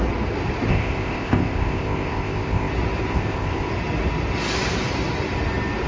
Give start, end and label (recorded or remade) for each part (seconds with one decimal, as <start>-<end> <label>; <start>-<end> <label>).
0.0-0.7 recorded; 0.7-2.7 remade; 2.7-3.1 recorded; 3.1-3.7 remade; 3.7-5.9 recorded